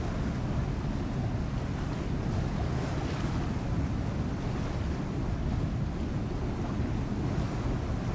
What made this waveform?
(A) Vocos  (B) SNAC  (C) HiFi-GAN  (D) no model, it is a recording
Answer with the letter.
D